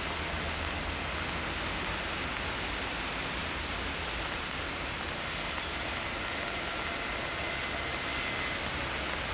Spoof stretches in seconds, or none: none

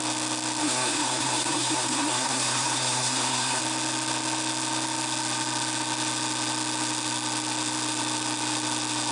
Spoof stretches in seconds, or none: 0.6-3.6 (codec, SNAC)

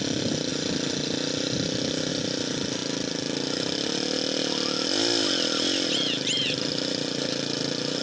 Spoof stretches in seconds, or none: none